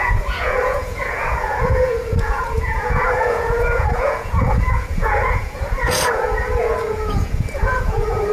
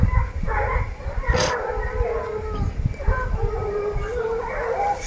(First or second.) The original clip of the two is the second